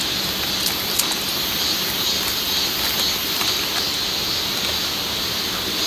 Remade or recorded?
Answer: recorded